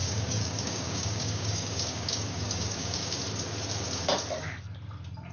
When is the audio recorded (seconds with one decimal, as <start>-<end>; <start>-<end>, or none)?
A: 3.2-5.3